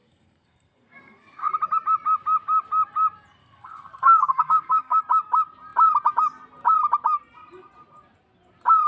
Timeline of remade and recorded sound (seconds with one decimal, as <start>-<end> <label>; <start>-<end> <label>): 0.0-1.5 remade; 1.5-3.4 recorded; 3.4-5.0 remade; 5.0-8.9 recorded

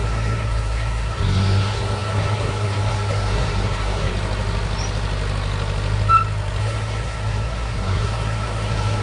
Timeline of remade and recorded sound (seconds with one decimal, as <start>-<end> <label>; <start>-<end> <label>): 0.0-4.1 remade; 4.1-6.6 recorded; 6.6-9.0 remade

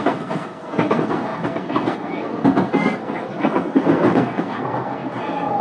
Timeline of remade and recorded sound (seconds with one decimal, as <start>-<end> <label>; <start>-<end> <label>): 0.0-5.6 remade